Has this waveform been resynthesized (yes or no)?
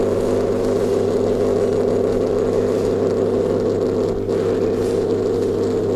no